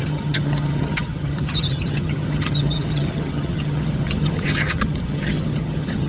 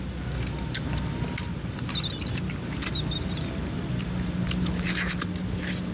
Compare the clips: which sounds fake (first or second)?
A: first